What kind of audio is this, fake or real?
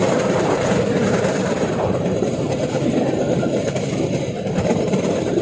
fake